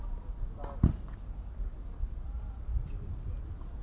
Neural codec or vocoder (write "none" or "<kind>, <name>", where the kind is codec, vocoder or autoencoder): none